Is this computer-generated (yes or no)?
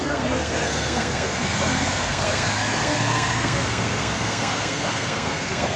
yes